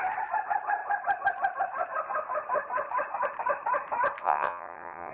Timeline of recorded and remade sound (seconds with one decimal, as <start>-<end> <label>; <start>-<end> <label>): 0.0-4.2 recorded; 4.2-5.1 remade